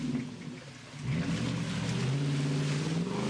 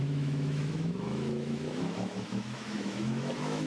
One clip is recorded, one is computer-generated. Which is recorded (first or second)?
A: first